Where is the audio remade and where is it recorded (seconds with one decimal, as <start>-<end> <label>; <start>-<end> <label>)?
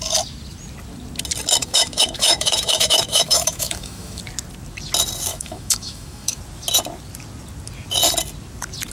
0.0-1.6 recorded; 1.6-4.2 remade; 4.2-5.3 recorded; 5.3-6.4 remade; 6.4-8.9 recorded